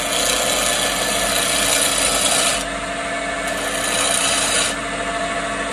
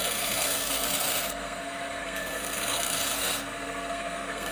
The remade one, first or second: second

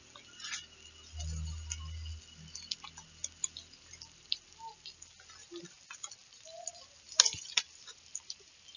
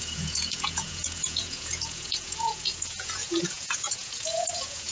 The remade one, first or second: second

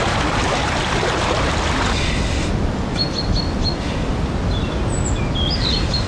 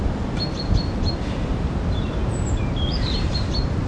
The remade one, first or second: second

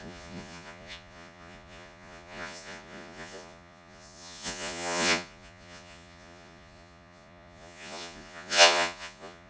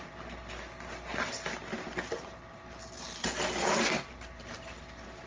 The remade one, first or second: first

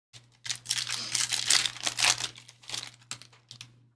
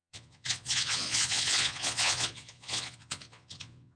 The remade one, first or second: second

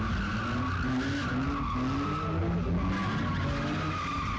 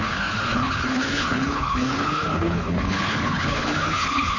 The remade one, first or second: second